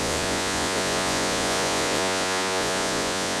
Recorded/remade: remade